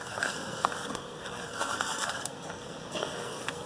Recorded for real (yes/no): no